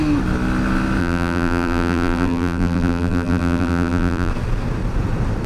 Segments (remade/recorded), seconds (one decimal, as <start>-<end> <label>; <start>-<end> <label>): 0.0-1.0 recorded; 1.0-4.3 remade; 4.3-5.5 recorded